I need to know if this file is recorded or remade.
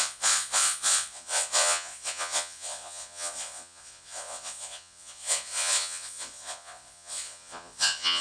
remade